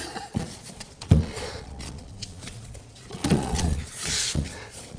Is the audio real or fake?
fake